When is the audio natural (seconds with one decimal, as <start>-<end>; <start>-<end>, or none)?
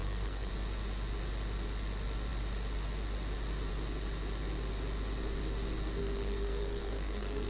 0.5-6.0